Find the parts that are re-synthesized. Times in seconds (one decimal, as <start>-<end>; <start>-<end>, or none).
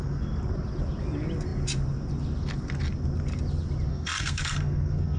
3.9-5.2